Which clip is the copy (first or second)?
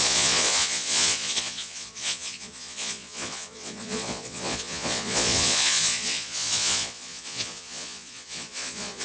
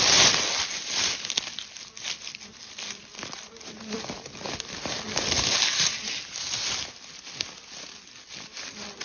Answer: first